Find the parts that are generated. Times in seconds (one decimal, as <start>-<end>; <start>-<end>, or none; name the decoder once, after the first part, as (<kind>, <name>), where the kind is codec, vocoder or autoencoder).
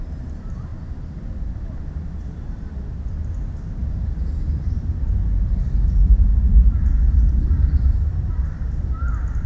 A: 0.0-0.7 (vocoder, BigVGAN v2); 2.2-6.5; 7.5-9.5